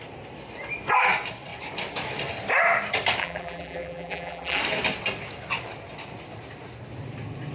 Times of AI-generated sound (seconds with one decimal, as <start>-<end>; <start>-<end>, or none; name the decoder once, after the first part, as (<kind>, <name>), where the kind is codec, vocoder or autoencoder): 3.2-4.6 (vocoder, BigVGAN v2)